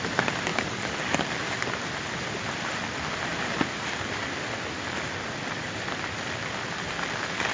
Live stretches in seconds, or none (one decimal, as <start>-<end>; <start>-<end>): 0.0-0.5; 1.2-7.5